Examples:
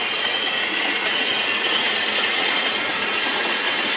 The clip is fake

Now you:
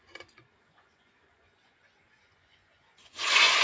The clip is fake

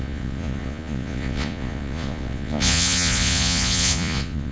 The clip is fake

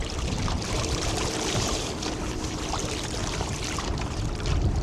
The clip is real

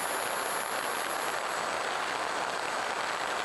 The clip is real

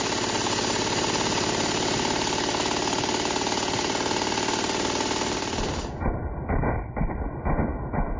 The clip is real